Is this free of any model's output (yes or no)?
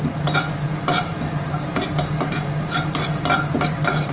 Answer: yes